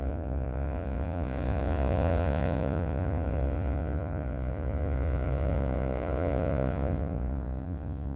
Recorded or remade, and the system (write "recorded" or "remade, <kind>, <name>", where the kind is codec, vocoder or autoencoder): remade, vocoder, Vocos